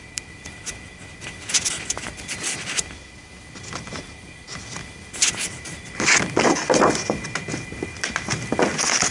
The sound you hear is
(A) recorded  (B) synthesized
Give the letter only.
A